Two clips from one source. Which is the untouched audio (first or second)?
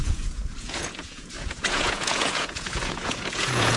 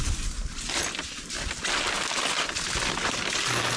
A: second